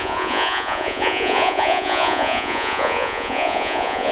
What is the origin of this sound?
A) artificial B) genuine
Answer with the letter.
A